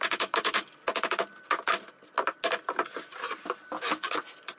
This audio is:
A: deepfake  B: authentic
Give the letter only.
B